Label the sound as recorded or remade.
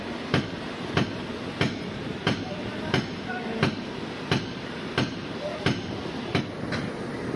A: remade